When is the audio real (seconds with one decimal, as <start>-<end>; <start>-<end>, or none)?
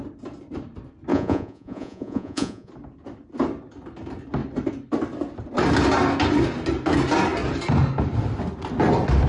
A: 0.0-1.1; 2.7-9.3